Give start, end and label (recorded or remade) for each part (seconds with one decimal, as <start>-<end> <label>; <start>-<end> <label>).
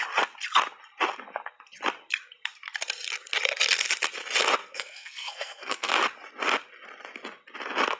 0.0-4.6 recorded; 4.6-5.9 remade; 5.9-8.0 recorded